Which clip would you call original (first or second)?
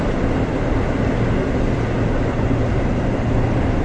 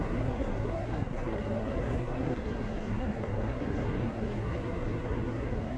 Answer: first